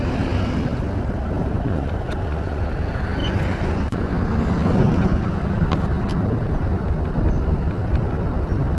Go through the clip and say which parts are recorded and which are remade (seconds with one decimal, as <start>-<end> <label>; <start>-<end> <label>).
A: 0.0-1.4 recorded; 1.4-2.6 remade; 2.6-3.2 recorded; 3.2-4.1 remade; 4.1-4.7 recorded; 4.7-5.4 remade; 5.4-8.8 recorded